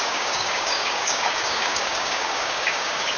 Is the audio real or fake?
fake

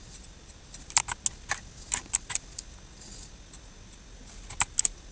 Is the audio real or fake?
real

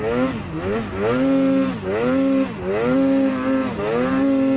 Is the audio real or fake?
real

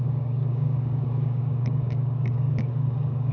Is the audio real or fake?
fake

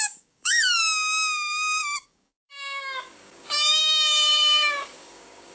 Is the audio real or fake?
fake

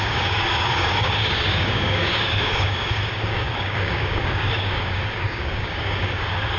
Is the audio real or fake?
fake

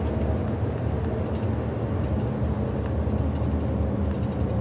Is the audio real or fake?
real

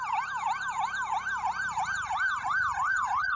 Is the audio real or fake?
real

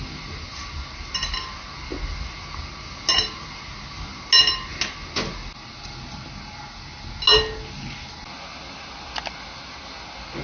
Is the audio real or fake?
real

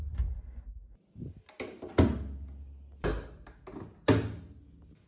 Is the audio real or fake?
real